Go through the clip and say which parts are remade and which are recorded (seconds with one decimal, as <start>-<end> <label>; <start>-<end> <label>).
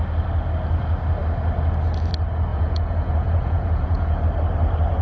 0.0-2.5 recorded; 2.5-4.2 remade; 4.2-5.0 recorded